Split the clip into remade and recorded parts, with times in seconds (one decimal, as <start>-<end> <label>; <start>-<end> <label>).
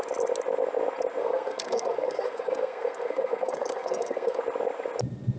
0.0-1.2 recorded; 1.2-4.4 remade; 4.4-5.4 recorded